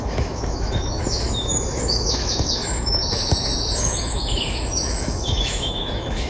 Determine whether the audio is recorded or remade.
remade